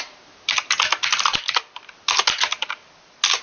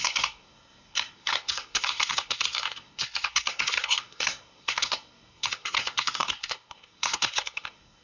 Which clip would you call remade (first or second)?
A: second